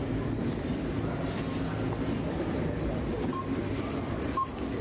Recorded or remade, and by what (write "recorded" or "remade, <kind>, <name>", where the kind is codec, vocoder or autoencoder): recorded